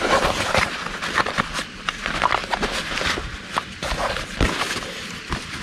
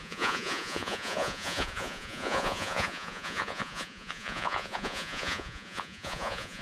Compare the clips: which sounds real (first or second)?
first